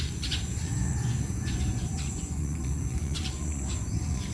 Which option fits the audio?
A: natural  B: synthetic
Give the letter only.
B